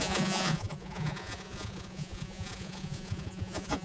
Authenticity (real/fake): fake